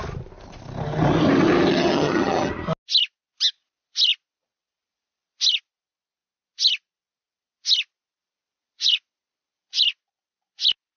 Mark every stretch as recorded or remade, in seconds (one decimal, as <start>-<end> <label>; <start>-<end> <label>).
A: 0.0-1.7 recorded; 1.7-2.5 remade; 2.5-11.0 recorded